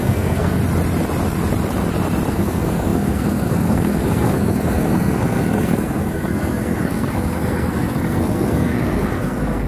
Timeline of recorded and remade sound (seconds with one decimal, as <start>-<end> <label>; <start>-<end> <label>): 0.0-0.6 remade; 0.6-2.3 recorded; 2.3-9.7 remade